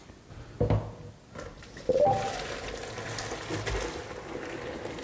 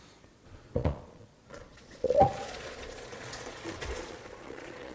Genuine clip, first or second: first